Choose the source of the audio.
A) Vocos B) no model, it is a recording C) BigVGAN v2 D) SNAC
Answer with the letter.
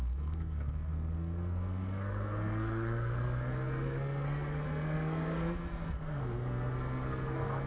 D